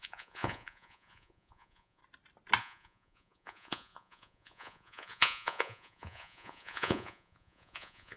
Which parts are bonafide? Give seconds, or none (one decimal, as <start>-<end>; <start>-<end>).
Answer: 2.0-2.6